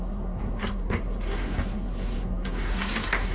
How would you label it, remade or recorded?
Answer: remade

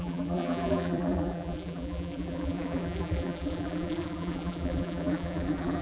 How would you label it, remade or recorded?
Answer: remade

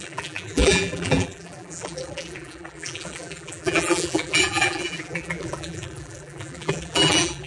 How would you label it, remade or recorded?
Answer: remade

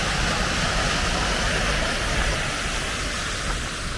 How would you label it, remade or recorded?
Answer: recorded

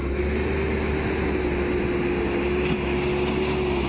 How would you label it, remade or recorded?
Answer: recorded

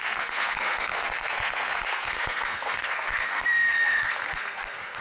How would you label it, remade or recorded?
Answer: remade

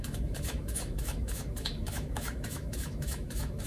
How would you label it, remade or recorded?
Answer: remade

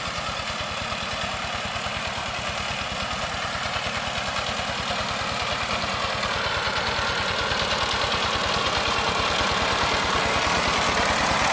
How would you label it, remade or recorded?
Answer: recorded